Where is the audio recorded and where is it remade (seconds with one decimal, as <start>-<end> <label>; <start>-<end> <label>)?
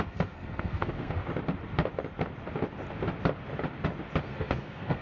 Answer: 0.0-1.2 remade; 1.2-4.2 recorded; 4.2-5.0 remade